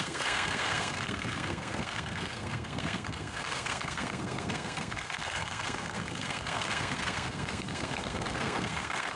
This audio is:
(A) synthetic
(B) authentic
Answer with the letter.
A